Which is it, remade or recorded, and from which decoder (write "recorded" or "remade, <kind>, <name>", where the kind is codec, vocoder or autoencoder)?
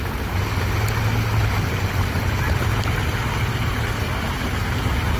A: recorded